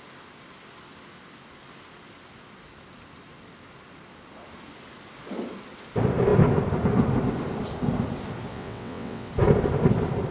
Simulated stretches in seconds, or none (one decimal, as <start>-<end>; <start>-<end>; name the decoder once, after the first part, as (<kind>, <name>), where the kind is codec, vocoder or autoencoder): 8.5-9.3 (vocoder, WaveNeXt)